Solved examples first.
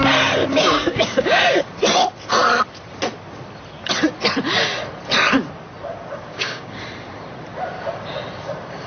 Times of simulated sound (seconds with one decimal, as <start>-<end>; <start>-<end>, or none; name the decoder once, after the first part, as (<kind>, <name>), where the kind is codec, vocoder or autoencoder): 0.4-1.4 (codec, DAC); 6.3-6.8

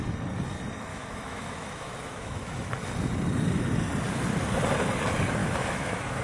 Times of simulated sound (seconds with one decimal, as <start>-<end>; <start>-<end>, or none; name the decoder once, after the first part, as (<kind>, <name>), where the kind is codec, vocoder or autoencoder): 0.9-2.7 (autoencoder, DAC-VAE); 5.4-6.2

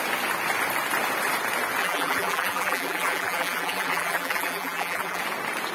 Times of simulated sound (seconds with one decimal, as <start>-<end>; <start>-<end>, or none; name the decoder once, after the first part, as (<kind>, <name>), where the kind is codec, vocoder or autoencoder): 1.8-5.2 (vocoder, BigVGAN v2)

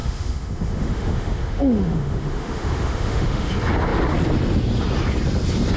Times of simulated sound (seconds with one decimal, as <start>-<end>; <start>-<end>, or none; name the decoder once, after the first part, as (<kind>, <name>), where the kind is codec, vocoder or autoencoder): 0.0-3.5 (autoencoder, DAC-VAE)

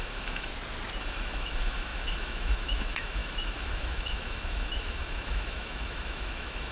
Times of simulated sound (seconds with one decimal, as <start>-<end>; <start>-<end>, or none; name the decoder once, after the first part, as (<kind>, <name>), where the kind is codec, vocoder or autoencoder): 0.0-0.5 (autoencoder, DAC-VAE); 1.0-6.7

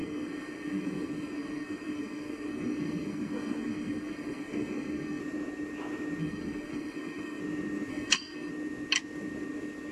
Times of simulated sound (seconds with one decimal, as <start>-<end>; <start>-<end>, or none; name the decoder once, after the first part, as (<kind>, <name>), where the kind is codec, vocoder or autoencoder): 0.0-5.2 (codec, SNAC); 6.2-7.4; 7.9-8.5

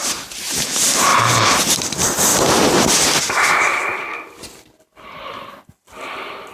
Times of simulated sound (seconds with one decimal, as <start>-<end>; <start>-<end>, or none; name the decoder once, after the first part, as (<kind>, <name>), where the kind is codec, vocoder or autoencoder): 2.3-2.9 (vocoder, BigVGAN v2)